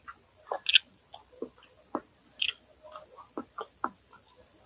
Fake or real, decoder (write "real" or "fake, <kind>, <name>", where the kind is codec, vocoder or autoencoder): real